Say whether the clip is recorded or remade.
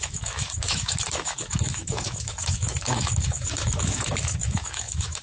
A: remade